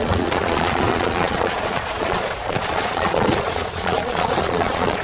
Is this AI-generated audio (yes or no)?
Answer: yes